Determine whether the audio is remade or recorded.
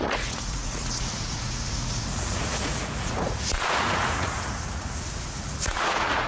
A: remade